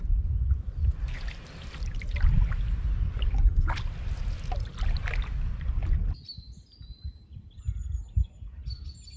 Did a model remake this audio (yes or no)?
no